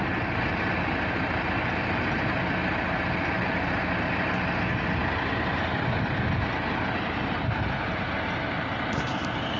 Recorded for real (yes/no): yes